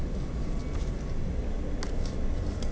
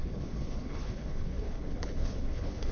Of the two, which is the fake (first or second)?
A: second